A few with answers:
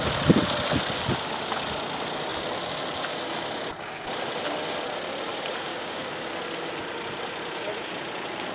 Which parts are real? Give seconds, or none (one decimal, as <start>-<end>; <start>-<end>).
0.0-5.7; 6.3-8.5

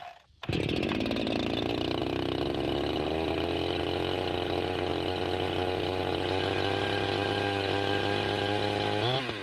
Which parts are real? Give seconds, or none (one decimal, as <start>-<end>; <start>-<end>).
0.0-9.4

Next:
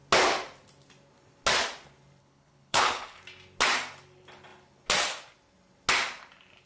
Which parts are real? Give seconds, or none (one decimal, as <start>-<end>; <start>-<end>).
0.0-2.2; 3.2-6.7